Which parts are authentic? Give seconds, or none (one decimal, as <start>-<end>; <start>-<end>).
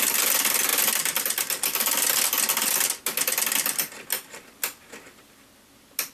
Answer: 0.0-6.1